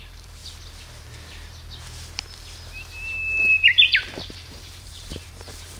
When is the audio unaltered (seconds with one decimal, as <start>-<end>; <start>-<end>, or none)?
0.4-3.4